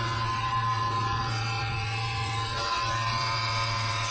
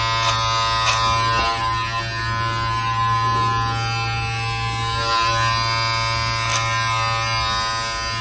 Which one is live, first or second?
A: second